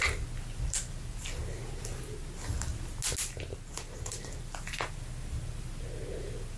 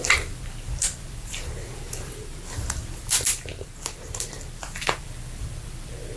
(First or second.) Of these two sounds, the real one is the first